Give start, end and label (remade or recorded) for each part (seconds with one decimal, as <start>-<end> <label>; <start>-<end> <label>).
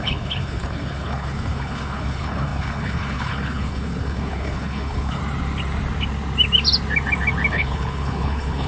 0.0-5.2 remade; 5.2-7.5 recorded; 7.5-8.7 remade